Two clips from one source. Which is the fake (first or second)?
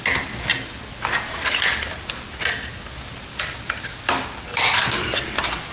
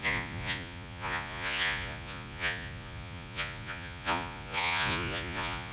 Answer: second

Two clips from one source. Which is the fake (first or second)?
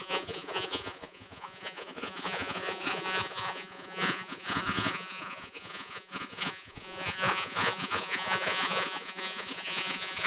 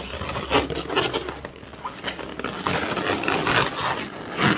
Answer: first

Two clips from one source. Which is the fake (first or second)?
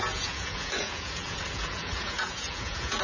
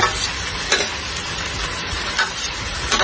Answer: first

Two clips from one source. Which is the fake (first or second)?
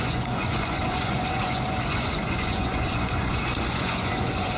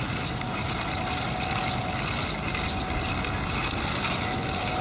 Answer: first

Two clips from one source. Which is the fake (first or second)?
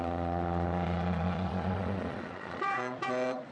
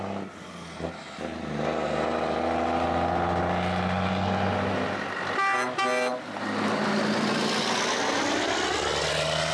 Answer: first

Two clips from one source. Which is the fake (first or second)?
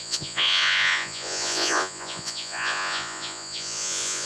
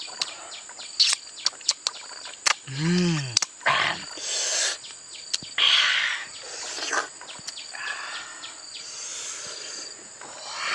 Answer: first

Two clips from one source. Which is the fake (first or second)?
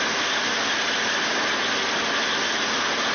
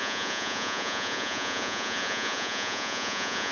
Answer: second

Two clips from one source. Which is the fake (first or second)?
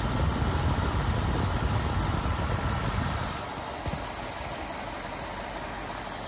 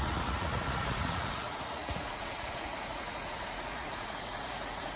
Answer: second